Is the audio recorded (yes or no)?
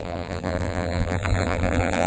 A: no